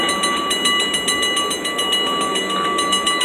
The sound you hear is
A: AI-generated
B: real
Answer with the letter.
B